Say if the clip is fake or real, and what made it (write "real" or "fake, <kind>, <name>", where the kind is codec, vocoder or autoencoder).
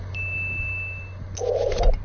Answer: real